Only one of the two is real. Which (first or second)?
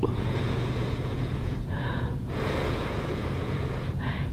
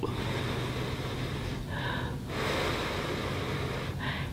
second